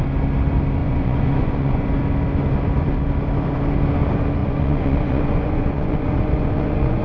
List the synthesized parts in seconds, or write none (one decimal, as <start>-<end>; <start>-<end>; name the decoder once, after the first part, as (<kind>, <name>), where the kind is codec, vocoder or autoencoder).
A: 0.8-1.9 (vocoder, Vocos); 4.4-7.0